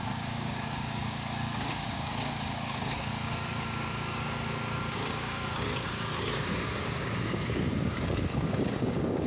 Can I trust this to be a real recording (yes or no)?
no